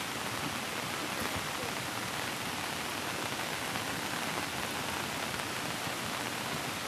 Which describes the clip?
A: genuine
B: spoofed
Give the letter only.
A